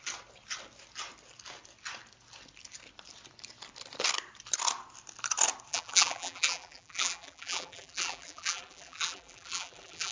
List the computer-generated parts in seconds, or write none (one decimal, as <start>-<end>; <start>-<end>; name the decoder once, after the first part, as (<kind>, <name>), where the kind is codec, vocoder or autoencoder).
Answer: 5.7-10.1 (vocoder, BigVGAN v2)